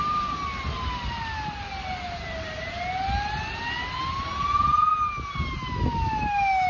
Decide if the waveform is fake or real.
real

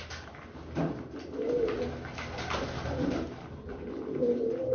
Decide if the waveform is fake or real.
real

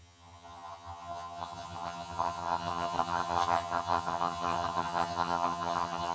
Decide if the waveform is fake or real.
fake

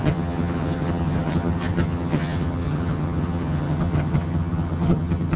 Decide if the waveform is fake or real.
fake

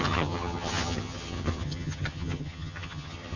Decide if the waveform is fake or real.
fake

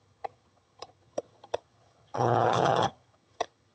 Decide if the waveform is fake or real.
fake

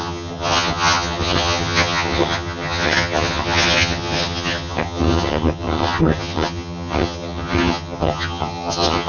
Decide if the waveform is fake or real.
fake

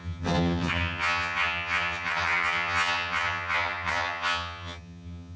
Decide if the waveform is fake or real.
fake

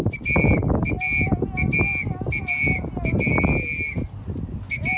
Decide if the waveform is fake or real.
real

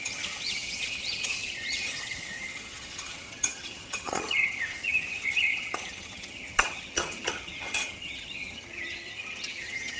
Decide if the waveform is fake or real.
fake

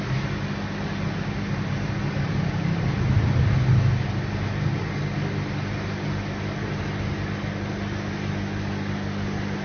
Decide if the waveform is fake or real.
real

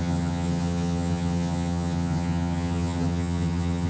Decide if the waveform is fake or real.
fake